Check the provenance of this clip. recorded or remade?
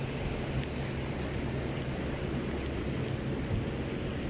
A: recorded